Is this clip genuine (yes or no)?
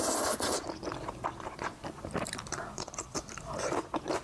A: no